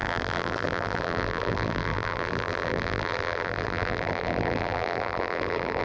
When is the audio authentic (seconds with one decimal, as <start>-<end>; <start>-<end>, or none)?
none